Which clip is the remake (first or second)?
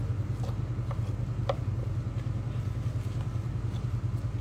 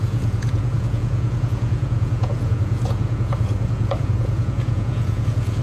second